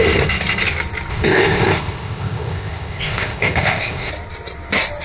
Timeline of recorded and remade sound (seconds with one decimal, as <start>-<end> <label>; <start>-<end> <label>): 0.0-1.1 recorded; 1.1-4.1 remade; 4.1-5.0 recorded